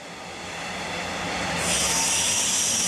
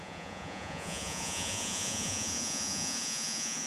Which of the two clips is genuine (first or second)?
first